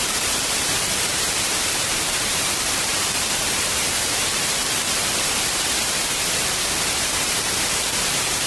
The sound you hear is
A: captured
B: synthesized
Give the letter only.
B